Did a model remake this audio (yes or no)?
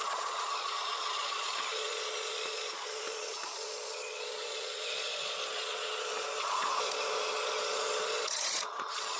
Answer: yes